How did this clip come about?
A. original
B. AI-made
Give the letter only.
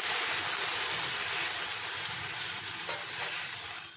A